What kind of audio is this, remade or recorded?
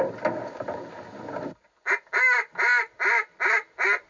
recorded